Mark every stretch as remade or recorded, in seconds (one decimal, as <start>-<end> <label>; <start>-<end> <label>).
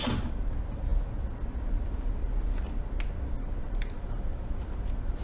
0.0-0.9 remade; 0.9-3.6 recorded; 3.6-5.2 remade